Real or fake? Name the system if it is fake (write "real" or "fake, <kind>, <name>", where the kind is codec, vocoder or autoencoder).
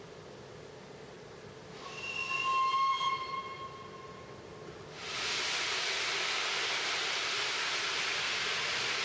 real